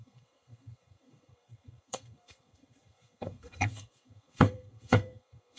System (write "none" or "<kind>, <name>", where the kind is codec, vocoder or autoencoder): codec, SNAC